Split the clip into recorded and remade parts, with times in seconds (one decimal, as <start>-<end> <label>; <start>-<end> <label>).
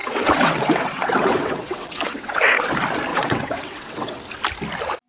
0.0-2.7 remade; 2.7-3.1 recorded; 3.1-4.2 remade; 4.2-5.1 recorded